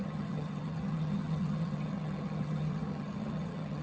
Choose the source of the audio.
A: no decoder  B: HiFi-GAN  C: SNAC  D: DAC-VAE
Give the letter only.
B